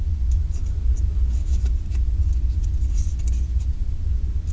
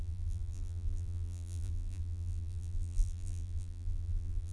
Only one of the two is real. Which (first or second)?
first